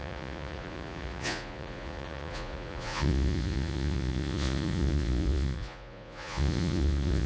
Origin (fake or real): fake